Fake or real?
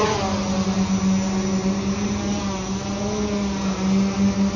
real